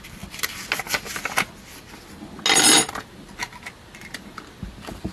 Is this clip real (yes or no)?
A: yes